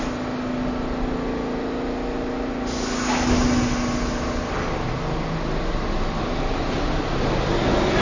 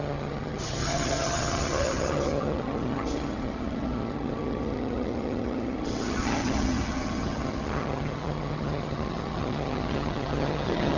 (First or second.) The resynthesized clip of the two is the second